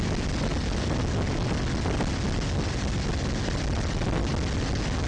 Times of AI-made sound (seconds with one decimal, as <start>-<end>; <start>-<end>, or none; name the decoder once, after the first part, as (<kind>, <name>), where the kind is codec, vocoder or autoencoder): none